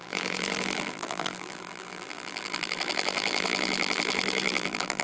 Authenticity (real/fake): fake